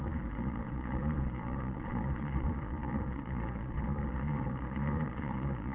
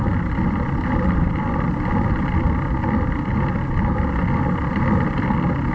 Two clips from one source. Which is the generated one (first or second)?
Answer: first